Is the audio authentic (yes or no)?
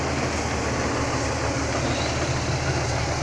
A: yes